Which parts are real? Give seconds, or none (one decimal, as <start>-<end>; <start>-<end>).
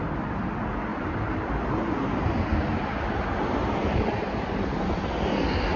0.0-0.9; 1.5-2.5; 5.0-5.8